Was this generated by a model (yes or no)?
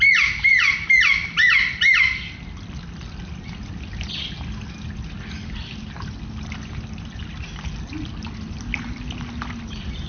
no